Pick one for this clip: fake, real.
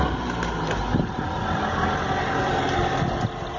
real